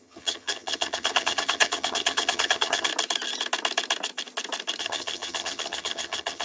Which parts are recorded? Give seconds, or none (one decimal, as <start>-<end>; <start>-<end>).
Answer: 2.9-4.8